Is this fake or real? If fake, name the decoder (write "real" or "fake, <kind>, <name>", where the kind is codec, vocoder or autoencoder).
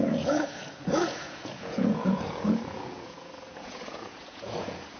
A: fake, vocoder, Vocos